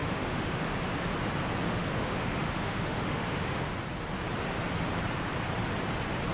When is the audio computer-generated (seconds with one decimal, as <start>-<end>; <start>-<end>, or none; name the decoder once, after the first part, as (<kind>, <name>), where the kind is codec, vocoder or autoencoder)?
0.0-0.6 (autoencoder, DAC-VAE); 1.7-3.6